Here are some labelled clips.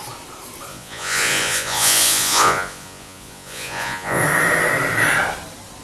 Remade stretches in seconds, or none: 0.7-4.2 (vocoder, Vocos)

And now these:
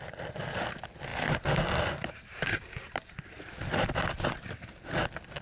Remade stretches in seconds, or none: 1.1-4.1 (vocoder, BigVGAN v2)

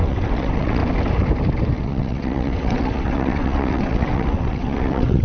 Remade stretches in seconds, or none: 0.0-0.8 (vocoder, WaveNeXt); 1.8-5.2

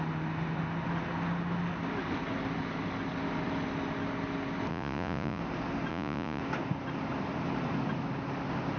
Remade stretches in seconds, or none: 4.7-5.4 (vocoder, Vocos); 5.9-6.4